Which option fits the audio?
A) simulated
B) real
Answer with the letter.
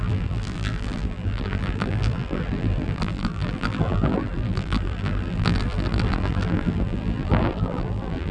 A